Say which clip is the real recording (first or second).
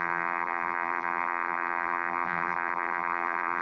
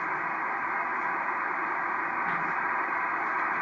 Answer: second